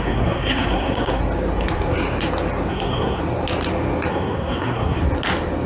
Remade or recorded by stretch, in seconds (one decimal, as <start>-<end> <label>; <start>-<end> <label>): 0.0-1.2 remade; 1.2-2.7 recorded; 2.7-3.2 remade; 3.2-4.1 recorded; 4.1-5.0 remade; 5.0-5.7 recorded